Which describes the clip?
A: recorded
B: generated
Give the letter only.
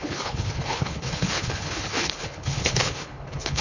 B